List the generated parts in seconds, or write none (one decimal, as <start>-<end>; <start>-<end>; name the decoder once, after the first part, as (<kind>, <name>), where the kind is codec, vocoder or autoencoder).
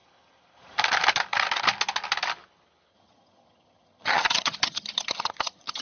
2.9-5.8 (vocoder, HiFi-GAN)